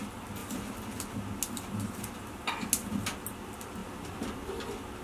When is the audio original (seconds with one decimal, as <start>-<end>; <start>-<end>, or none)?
0.0-5.0